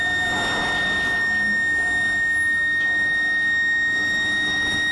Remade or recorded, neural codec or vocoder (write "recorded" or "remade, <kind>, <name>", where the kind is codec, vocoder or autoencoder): recorded